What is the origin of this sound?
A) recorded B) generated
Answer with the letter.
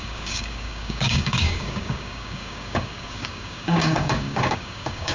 B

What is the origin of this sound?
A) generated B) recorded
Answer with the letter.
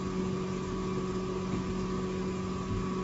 B